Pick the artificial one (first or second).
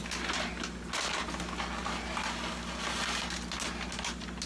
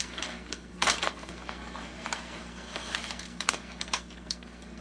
second